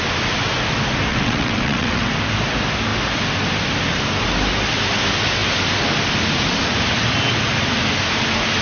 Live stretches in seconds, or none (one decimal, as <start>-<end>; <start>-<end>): 0.0-1.1; 2.1-8.6

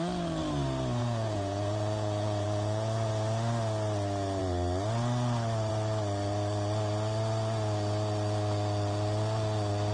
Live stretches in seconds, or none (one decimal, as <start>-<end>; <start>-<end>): 0.0-1.0; 3.1-9.9

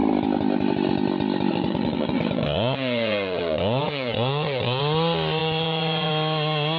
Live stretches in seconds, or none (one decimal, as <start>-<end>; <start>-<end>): 0.0-1.5; 4.8-5.4; 6.1-6.8

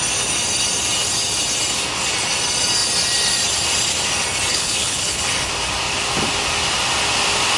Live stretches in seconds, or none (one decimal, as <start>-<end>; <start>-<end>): 0.0-4.5; 5.5-7.6

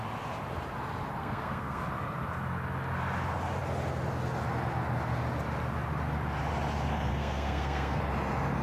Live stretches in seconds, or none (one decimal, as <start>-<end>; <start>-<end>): 0.0-1.2; 1.8-7.1; 8.0-8.6

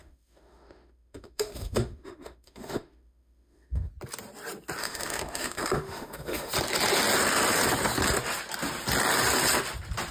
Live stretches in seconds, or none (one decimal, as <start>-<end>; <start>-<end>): 3.9-4.8; 6.5-10.1

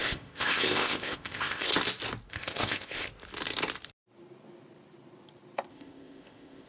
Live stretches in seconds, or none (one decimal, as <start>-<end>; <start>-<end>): 1.7-2.3; 3.1-5.7